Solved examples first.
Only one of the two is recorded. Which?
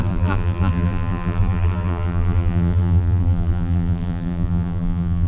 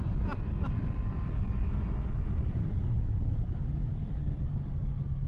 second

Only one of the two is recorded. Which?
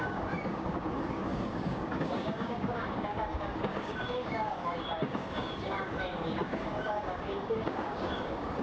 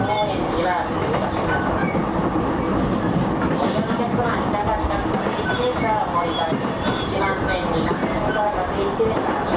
second